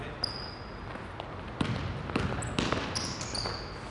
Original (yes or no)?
yes